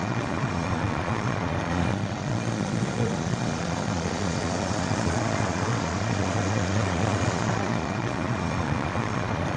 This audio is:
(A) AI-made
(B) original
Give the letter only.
A